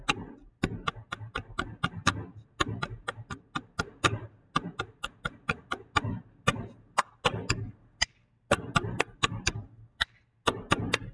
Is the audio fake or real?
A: real